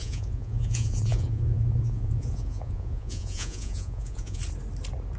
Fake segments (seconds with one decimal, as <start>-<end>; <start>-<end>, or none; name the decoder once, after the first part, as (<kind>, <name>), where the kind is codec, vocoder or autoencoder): 0.0-4.4 (vocoder, Vocos)